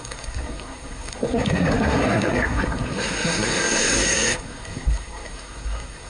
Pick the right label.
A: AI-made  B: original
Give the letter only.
A